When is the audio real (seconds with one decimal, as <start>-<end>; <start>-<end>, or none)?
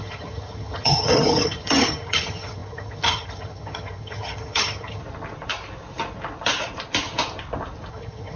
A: 5.0-7.9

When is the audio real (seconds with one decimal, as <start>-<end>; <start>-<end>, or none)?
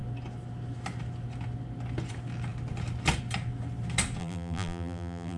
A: 0.0-4.2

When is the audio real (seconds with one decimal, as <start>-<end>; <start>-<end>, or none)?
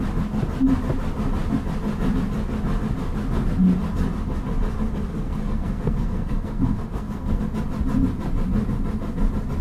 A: 0.0-5.1; 7.4-9.6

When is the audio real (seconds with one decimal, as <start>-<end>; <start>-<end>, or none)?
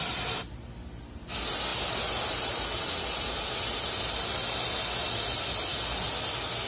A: 0.0-6.7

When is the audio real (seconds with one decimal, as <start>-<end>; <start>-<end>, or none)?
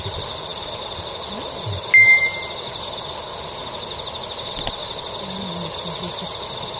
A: 0.0-6.8